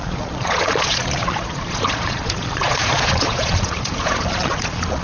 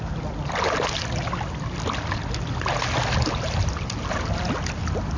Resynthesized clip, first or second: first